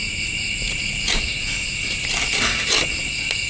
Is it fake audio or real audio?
real